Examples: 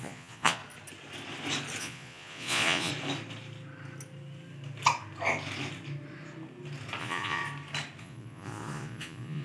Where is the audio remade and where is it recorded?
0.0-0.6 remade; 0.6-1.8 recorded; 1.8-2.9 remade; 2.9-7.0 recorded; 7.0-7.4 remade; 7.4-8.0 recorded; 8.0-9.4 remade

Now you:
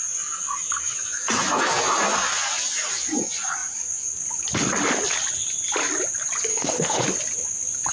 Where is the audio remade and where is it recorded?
0.0-6.5 recorded; 6.5-7.0 remade; 7.0-7.9 recorded

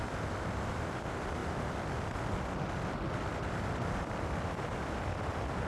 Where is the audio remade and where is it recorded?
0.0-5.7 recorded

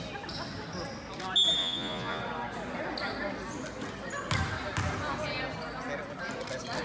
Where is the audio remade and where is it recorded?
0.0-1.6 recorded; 1.6-2.2 remade; 2.2-6.8 recorded

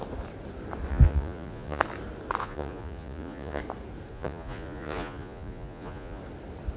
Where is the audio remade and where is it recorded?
0.0-0.9 recorded; 0.9-1.8 remade; 1.8-2.4 recorded; 2.4-3.6 remade; 3.6-4.1 recorded; 4.1-6.2 remade; 6.2-6.8 recorded

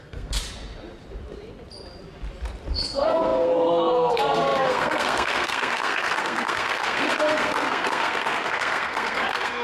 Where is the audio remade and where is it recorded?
0.0-0.4 remade; 0.4-2.7 recorded; 2.7-9.6 remade